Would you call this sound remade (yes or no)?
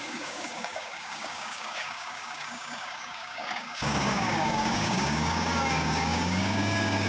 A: yes